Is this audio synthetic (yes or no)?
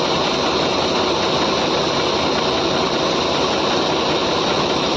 no